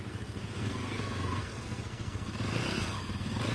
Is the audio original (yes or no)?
no